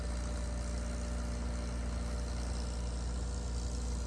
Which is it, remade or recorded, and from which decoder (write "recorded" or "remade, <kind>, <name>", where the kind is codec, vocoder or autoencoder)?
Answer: recorded